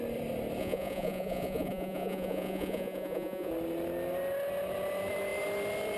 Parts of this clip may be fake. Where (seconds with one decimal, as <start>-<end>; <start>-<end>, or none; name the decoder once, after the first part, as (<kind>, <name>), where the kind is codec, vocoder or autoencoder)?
0.6-3.5 (vocoder, Vocos)